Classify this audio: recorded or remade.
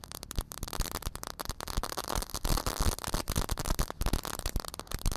remade